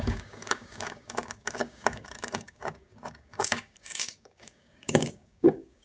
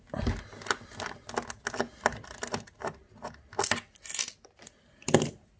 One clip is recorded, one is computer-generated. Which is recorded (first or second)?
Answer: second